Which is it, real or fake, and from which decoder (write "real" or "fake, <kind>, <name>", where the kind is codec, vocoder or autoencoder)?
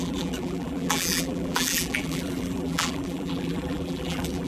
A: fake, vocoder, BigVGAN v2